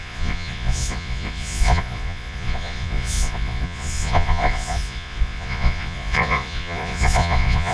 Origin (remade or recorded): remade